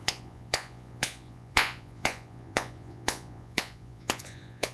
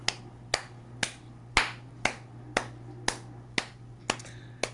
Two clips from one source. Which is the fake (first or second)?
first